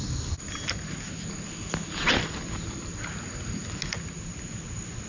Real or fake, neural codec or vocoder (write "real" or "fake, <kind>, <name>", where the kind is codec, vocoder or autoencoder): real